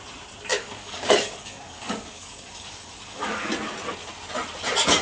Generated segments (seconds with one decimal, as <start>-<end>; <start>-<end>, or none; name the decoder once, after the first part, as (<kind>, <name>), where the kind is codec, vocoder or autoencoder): 0.5-3.5 (codec, DAC)